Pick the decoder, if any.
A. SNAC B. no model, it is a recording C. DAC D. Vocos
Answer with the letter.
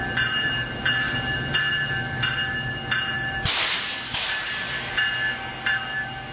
B